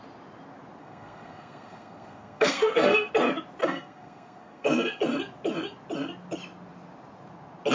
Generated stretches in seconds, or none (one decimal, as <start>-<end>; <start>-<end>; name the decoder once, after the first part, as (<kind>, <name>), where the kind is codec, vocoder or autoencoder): 0.8-3.1 (codec, SNAC); 3.6-5.0